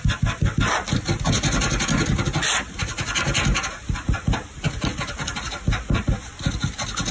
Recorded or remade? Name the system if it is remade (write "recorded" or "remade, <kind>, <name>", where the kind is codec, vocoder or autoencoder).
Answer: recorded